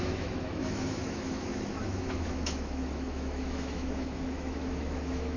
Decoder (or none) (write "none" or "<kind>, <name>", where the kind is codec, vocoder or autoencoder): autoencoder, DAC-VAE